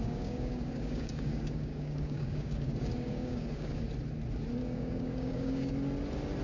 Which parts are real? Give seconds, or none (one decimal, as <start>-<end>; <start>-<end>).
3.8-4.6; 5.7-6.4